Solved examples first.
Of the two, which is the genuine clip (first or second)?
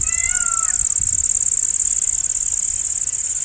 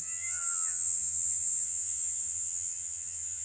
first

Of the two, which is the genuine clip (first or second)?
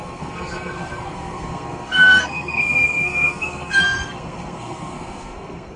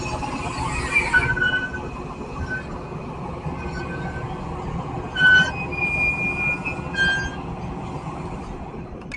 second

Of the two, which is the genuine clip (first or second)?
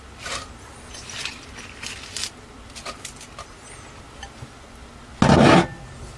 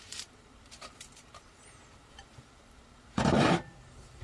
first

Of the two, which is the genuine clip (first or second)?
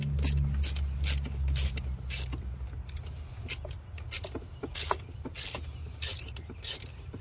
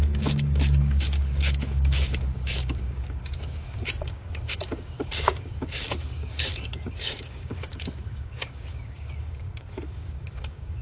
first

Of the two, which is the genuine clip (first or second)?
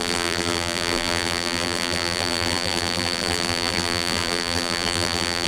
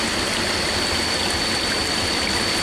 second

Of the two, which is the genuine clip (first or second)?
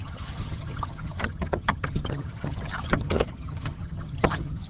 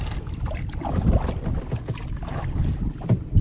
second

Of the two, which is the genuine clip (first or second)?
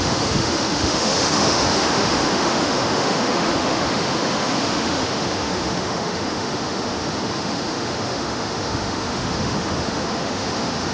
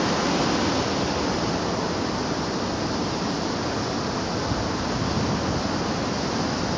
second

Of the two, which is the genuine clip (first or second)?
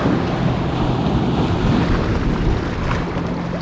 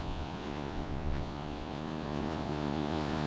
first